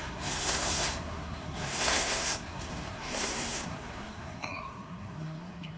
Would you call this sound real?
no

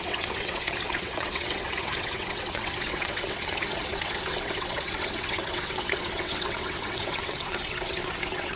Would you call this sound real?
no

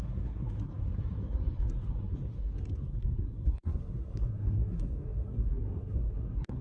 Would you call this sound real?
no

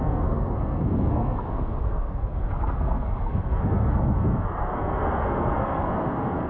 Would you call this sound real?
no